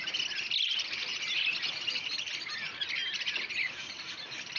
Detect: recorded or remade remade